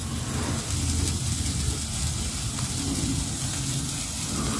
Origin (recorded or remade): recorded